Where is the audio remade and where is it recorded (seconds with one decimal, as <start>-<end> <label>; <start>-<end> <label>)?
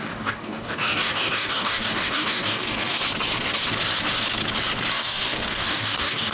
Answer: 0.0-3.0 remade; 3.0-4.9 recorded; 4.9-6.3 remade